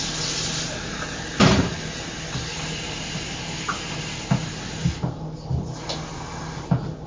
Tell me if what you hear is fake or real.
real